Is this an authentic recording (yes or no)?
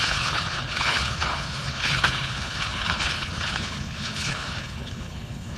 no